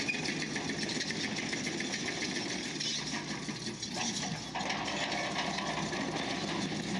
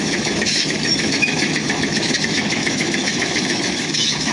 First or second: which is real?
first